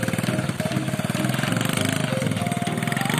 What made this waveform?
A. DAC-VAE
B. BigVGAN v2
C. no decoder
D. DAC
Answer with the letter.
C